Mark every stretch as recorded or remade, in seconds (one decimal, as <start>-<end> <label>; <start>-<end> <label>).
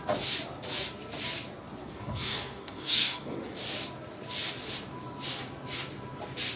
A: 0.0-1.8 recorded; 1.8-3.4 remade; 3.4-6.6 recorded